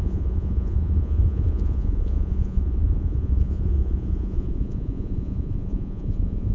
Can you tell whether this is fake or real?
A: fake